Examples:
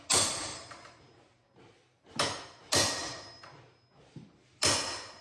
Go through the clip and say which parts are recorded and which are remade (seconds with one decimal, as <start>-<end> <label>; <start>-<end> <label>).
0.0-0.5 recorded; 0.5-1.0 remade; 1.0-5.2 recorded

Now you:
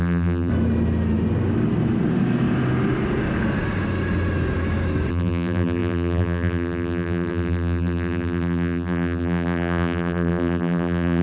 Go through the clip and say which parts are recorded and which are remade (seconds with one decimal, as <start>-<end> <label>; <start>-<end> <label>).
0.0-0.5 remade; 0.5-5.1 recorded; 5.1-11.2 remade

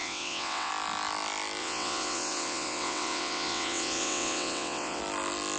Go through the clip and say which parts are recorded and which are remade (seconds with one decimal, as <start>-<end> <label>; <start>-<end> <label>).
0.0-0.7 remade; 0.7-1.6 recorded; 1.6-5.0 remade; 5.0-5.6 recorded